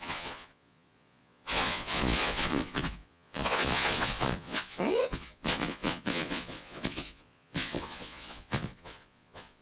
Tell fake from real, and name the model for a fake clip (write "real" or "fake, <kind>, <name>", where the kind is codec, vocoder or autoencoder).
fake, vocoder, Vocos